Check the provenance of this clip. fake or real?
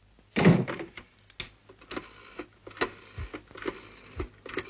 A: real